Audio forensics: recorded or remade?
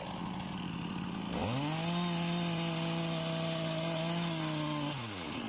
recorded